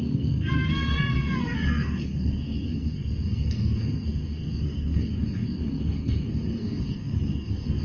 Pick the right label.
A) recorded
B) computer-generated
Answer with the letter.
B